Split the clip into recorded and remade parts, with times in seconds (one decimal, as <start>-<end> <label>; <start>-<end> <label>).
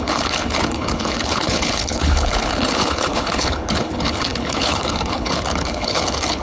0.0-6.4 remade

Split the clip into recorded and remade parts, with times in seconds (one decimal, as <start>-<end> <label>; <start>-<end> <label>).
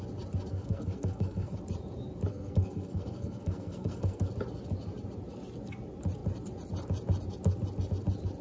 0.0-0.5 recorded; 0.5-1.6 remade; 1.6-2.3 recorded; 2.3-4.3 remade; 4.3-8.4 recorded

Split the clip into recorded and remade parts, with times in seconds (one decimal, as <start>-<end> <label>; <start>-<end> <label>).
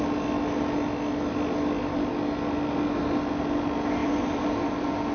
0.0-4.0 recorded; 4.0-5.1 remade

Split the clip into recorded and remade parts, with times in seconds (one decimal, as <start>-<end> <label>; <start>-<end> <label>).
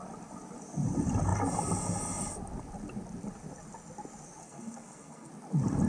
0.0-4.4 recorded; 4.4-5.3 remade; 5.3-5.9 recorded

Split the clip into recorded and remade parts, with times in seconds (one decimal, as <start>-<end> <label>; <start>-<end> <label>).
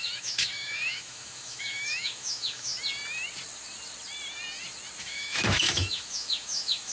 0.0-2.7 remade; 2.7-5.0 recorded; 5.0-6.9 remade